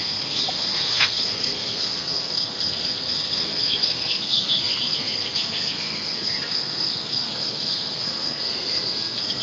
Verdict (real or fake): fake